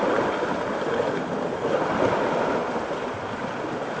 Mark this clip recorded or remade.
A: recorded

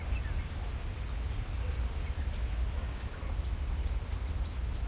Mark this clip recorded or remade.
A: recorded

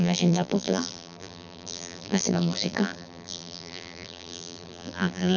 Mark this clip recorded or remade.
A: remade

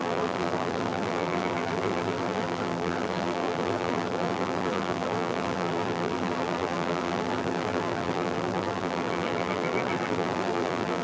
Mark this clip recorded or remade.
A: remade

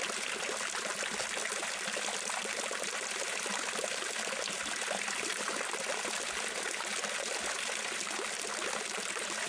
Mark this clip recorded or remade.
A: recorded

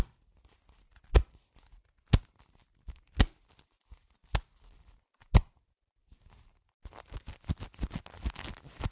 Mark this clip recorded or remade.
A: recorded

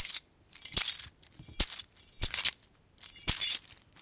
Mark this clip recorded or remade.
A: recorded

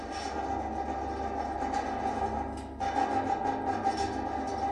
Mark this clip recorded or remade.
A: recorded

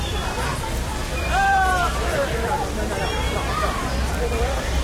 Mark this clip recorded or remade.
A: remade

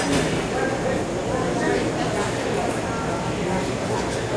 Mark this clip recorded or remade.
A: recorded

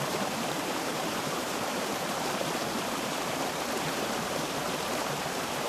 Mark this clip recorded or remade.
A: remade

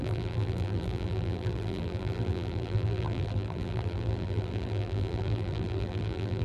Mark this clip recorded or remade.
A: remade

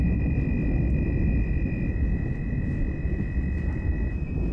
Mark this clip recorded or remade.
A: recorded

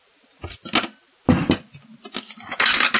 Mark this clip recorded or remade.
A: recorded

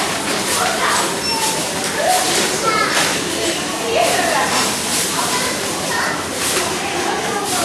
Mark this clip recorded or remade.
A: remade